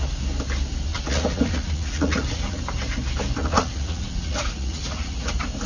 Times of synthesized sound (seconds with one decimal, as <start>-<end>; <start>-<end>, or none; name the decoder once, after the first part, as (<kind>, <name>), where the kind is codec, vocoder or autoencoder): 0.9-2.6 (vocoder, Vocos); 3.4-5.3